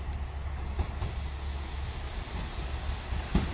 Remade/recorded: recorded